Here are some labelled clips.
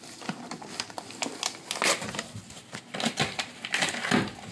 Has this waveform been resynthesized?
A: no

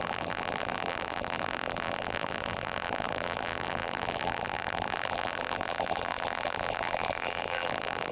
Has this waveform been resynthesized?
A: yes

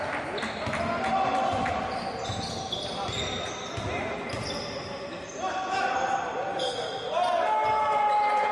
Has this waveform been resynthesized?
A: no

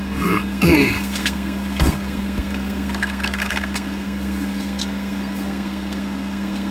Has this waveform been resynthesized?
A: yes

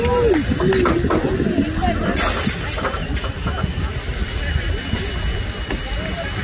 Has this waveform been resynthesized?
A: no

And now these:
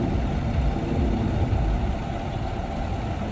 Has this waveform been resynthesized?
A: no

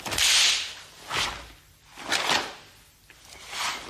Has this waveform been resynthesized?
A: no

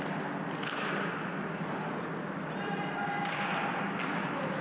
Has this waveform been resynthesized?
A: no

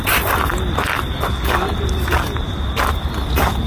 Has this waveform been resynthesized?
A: no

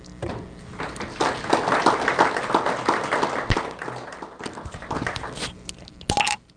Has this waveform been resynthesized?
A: no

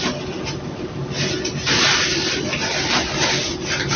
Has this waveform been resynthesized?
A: no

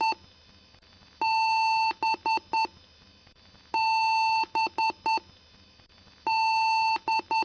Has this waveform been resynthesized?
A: no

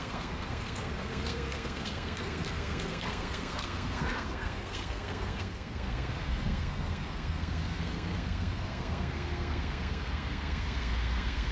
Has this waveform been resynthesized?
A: yes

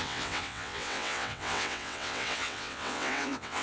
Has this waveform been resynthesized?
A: yes